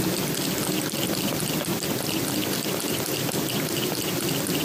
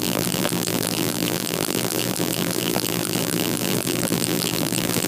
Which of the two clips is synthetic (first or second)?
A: second